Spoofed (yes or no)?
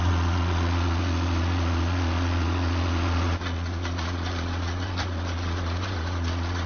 yes